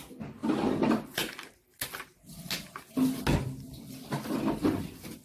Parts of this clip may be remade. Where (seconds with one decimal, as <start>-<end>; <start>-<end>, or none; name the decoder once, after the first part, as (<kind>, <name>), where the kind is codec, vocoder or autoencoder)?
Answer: none